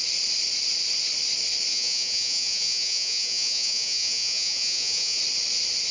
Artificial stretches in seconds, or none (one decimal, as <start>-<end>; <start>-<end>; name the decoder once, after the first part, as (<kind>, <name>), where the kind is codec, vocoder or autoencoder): 1.7-5.2 (vocoder, Vocos)

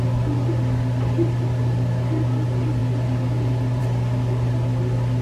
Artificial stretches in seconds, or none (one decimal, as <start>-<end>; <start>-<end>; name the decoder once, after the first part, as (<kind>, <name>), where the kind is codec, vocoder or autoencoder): 2.8-3.8 (vocoder, BigVGAN v2)

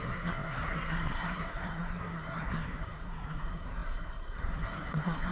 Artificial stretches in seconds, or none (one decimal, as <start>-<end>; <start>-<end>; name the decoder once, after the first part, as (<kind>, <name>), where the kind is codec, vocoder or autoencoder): 0.0-5.3 (codec, SNAC)

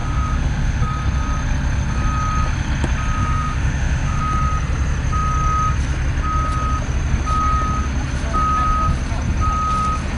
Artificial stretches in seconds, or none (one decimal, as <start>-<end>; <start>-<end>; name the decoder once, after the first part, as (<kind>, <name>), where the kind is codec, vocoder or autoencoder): 0.0-0.8 (autoencoder, DAC-VAE); 3.2-4.2

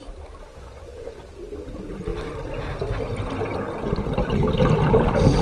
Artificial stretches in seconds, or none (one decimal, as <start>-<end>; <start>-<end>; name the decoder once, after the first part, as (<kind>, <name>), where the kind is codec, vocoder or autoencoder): 0.5-1.3 (vocoder, Vocos)

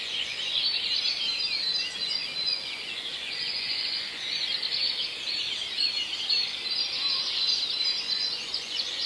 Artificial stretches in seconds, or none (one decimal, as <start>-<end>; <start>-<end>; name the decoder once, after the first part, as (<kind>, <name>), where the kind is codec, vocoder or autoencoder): 0.0-0.6 (vocoder, Vocos); 1.9-4.5; 8.0-9.1

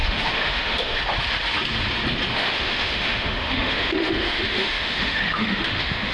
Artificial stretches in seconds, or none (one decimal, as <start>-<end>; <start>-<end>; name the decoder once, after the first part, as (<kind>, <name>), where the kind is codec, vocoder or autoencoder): 0.0-1.0 (autoencoder, DAC-VAE); 2.3-6.1